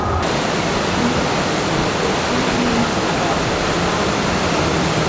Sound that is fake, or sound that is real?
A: real